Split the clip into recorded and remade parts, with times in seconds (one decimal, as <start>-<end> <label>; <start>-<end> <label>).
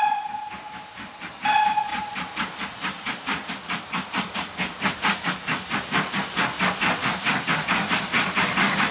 0.0-1.9 recorded; 1.9-3.5 remade; 3.5-8.9 recorded